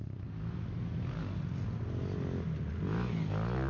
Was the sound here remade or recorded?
recorded